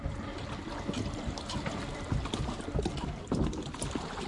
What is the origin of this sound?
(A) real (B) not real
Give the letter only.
A